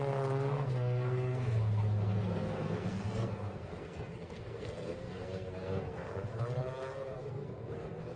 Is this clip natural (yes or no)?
no